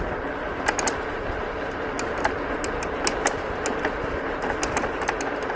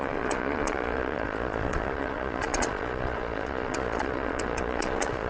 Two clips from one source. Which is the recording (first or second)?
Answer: first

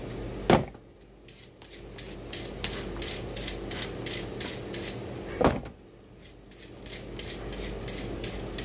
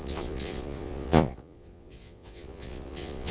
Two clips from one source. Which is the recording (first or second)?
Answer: first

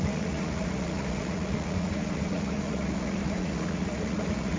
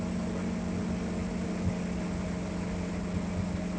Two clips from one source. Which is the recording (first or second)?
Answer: second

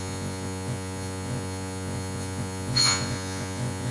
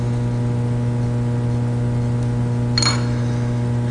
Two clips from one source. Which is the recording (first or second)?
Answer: second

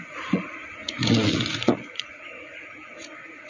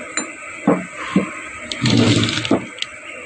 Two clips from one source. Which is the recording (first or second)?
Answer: second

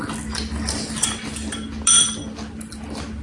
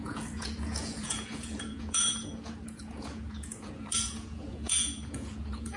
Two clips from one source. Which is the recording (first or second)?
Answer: first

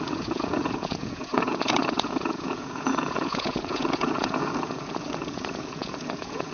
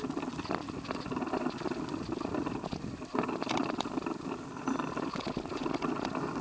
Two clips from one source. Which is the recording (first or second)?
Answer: second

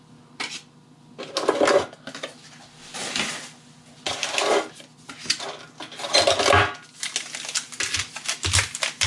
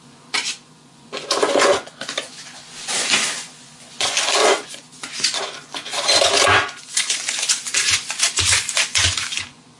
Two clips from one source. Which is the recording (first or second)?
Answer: first